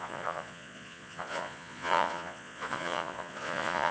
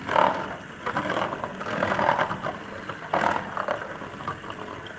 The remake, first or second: first